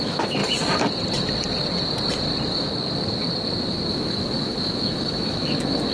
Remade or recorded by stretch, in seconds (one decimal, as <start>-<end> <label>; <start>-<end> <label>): 0.0-0.4 remade; 0.4-3.9 recorded; 3.9-5.9 remade